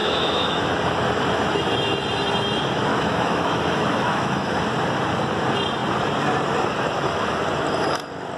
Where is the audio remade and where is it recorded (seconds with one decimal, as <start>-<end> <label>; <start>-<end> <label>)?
0.0-0.6 remade; 0.6-2.9 recorded; 2.9-4.5 remade; 4.5-8.4 recorded